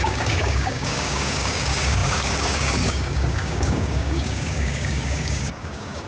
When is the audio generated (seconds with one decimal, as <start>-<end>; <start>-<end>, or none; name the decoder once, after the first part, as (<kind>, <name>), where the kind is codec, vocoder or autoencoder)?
0.0-6.1 (codec, DAC)